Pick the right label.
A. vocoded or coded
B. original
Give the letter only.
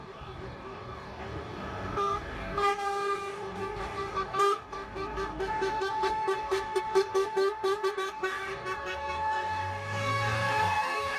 A